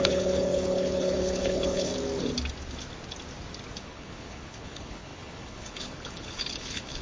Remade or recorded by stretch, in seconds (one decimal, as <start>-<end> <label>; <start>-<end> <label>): 0.0-1.9 remade; 1.9-3.8 recorded; 3.8-7.0 remade